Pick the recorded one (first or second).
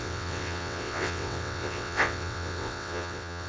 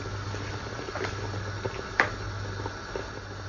second